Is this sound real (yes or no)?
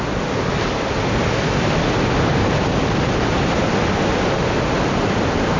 yes